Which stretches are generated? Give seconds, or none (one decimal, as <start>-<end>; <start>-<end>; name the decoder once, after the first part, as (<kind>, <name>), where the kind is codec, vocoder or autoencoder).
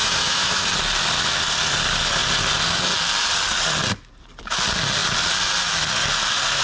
0.0-0.7 (autoencoder, DAC-VAE)